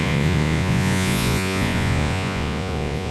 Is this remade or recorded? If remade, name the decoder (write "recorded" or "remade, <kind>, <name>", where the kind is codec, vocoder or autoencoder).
remade, vocoder, Vocos